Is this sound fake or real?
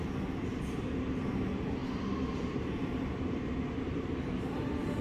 fake